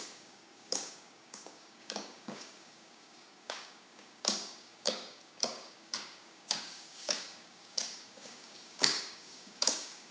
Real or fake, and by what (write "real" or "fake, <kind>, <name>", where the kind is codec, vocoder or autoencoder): fake, codec, DAC